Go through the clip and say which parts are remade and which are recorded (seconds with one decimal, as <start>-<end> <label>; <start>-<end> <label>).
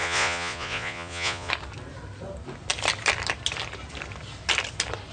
0.0-1.5 remade; 1.5-5.1 recorded